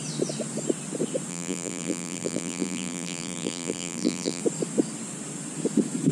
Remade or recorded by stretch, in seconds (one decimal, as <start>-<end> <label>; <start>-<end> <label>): 0.0-1.3 recorded; 1.3-4.4 remade; 4.4-6.1 recorded